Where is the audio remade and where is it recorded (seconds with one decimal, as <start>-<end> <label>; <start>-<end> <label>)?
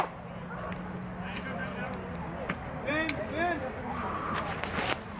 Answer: 0.0-5.2 recorded